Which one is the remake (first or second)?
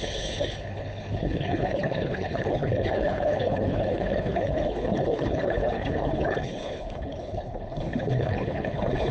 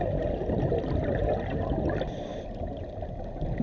first